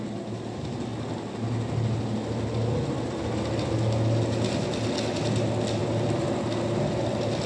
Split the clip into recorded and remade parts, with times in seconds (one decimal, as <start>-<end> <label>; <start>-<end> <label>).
0.0-7.5 recorded